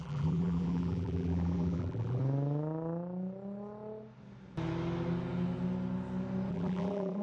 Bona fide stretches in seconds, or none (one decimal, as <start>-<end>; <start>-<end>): 2.2-6.5